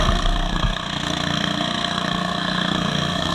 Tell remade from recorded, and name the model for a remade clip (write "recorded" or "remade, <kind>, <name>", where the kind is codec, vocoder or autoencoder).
remade, codec, SNAC